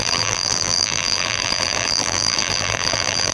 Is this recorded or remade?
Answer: remade